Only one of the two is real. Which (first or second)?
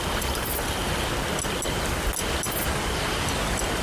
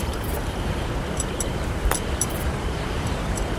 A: first